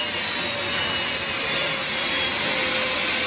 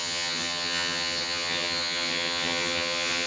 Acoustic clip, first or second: first